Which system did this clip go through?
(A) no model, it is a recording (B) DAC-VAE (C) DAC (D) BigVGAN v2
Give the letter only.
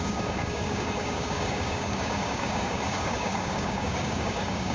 C